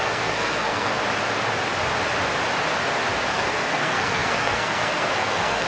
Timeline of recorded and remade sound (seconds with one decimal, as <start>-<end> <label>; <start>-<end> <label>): 0.0-1.0 remade; 1.0-3.3 recorded; 3.3-5.7 remade